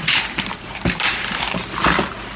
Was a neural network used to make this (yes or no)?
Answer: yes